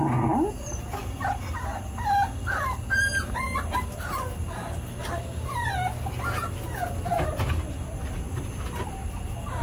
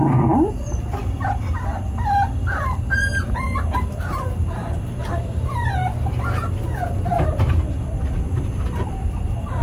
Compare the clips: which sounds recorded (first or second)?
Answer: first